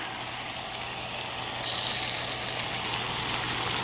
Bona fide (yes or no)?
yes